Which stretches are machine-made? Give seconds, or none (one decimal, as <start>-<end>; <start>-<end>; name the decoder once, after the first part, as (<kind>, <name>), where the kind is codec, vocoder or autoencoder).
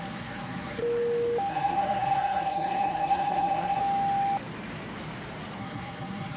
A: 0.0-0.8 (codec, SNAC); 1.5-3.8; 5.6-6.4